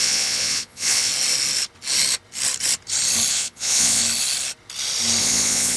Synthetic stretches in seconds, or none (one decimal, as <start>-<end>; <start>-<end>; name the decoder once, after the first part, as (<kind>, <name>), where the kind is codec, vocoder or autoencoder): 0.0-1.1 (vocoder, Vocos); 3.3-4.0; 5.2-5.8